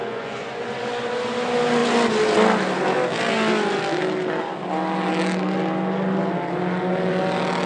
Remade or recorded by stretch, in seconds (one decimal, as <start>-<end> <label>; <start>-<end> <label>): 0.0-0.6 remade; 0.6-7.7 recorded